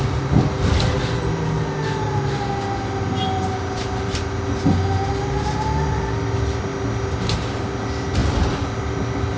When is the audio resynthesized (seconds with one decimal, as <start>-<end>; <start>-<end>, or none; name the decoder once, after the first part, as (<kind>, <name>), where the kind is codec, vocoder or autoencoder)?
none